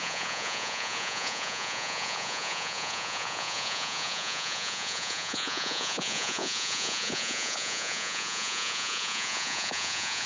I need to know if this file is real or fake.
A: fake